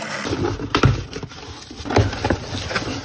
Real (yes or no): yes